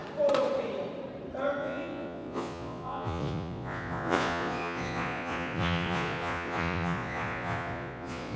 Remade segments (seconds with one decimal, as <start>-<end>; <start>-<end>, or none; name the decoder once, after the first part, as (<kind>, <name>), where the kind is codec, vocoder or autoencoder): 1.6-8.4 (vocoder, Vocos)